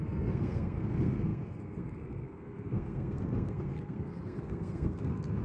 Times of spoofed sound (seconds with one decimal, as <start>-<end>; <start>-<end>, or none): 0.0-5.4